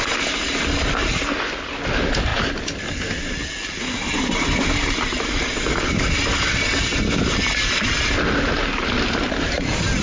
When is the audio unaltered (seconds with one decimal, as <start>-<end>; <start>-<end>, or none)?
0.0-10.0